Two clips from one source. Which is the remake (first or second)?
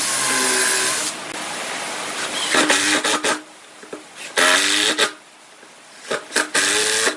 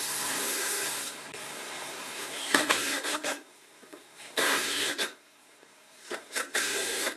second